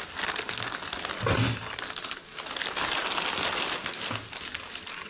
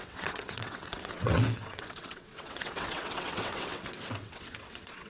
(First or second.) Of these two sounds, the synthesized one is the second